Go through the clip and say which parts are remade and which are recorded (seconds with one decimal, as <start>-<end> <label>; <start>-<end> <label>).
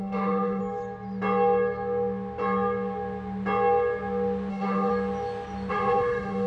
0.0-0.6 remade; 0.6-4.5 recorded; 4.5-4.9 remade; 4.9-5.7 recorded; 5.7-6.5 remade